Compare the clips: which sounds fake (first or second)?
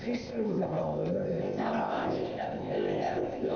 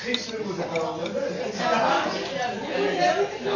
first